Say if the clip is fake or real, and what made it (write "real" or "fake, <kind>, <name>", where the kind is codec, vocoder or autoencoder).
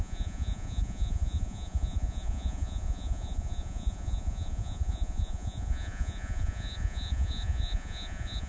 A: fake, vocoder, Vocos